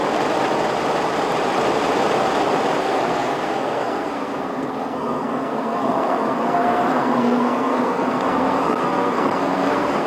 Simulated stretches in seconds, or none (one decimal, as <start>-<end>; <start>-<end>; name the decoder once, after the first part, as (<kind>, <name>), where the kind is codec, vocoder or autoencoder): 2.8-10.1 (codec, SNAC)